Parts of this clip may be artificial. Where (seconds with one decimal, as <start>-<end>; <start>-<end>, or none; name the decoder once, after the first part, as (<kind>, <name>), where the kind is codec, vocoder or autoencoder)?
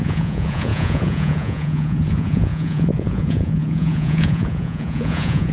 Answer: 0.0-5.5 (vocoder, Vocos)